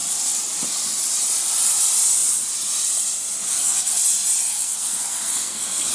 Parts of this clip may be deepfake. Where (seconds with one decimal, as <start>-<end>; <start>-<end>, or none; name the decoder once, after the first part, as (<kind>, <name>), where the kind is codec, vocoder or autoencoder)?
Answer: 3.5-4.0 (codec, SNAC); 4.5-5.9